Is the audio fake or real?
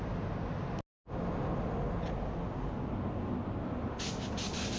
real